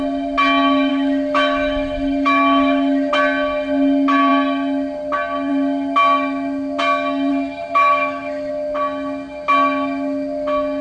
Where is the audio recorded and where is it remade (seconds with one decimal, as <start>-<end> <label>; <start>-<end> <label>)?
0.0-0.9 recorded; 0.9-3.1 remade; 3.1-7.3 recorded; 7.3-8.5 remade; 8.5-10.8 recorded